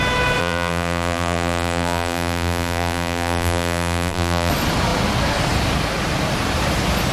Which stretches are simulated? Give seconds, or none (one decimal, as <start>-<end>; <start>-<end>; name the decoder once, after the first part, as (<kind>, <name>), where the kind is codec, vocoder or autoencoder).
0.4-4.5 (vocoder, BigVGAN v2)